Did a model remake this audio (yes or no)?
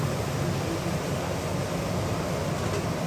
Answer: no